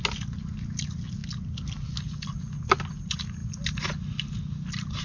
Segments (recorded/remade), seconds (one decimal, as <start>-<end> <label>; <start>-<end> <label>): 0.0-5.0 recorded